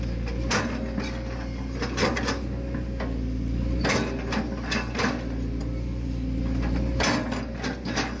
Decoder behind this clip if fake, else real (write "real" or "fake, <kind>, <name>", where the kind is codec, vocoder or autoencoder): real